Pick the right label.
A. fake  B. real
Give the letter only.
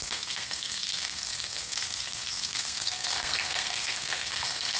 A